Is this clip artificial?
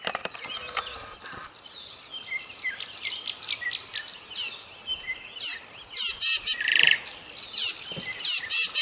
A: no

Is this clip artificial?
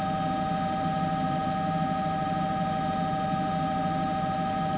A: no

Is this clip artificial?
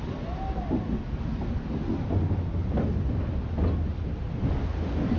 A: no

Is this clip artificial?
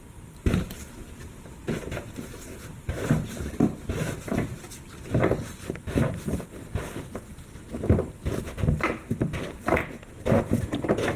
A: no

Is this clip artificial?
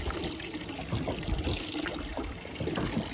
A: no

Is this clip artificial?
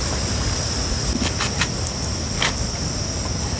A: no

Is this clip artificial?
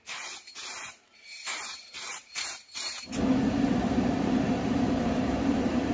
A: yes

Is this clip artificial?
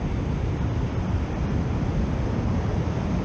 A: yes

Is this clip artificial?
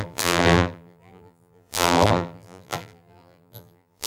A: yes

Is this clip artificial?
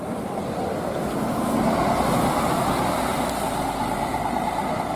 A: no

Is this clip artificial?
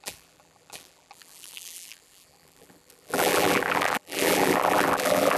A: yes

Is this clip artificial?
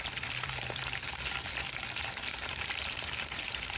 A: yes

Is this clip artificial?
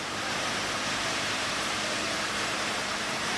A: yes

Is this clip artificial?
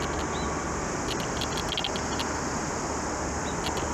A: no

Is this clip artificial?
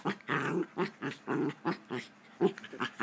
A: no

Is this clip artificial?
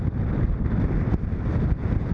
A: no